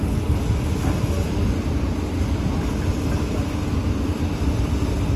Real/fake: real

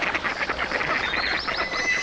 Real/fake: real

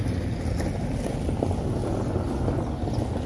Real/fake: real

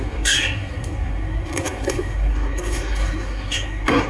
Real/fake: fake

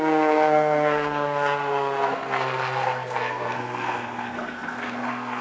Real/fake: fake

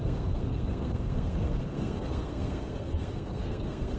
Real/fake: fake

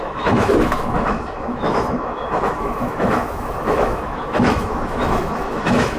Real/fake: fake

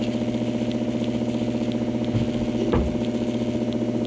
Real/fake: real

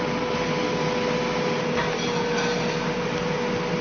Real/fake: real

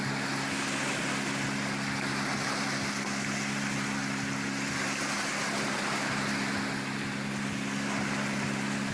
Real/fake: real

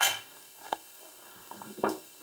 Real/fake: fake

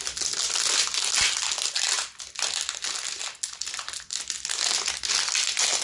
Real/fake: real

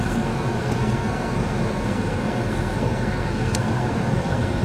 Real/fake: fake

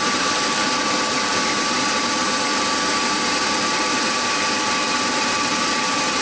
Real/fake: fake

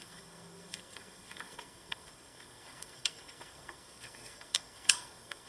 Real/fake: fake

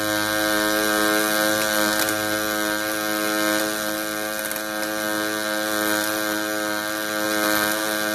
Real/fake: real